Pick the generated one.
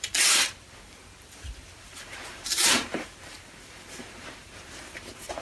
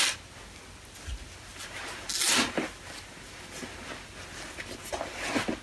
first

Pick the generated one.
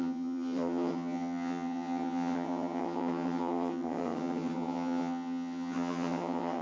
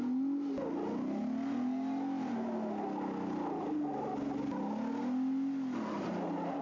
first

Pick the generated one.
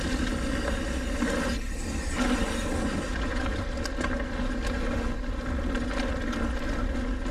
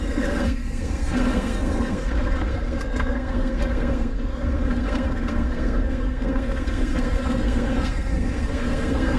second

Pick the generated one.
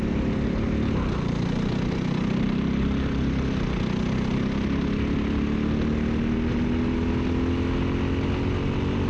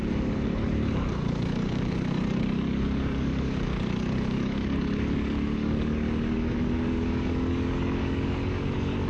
second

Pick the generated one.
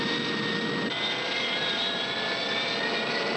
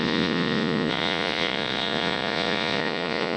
second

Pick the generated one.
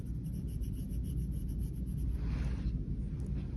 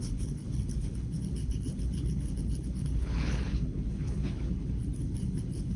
second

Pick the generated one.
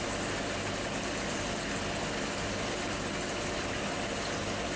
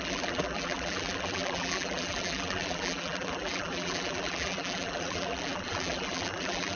second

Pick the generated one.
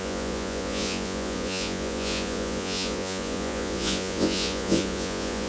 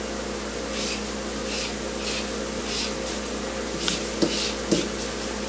first